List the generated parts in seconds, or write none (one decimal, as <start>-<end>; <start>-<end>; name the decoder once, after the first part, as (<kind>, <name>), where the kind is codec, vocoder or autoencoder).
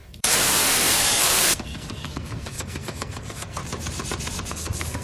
0.0-3.6 (codec, SNAC); 4.5-5.0